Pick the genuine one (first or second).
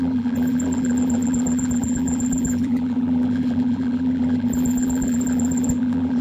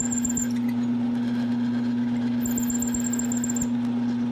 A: second